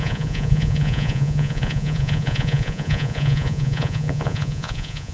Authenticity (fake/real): fake